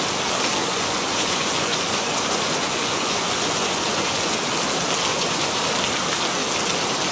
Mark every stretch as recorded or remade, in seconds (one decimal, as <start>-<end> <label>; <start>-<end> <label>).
0.0-0.6 recorded; 0.6-4.3 remade; 4.3-5.1 recorded; 5.1-5.6 remade; 5.6-7.1 recorded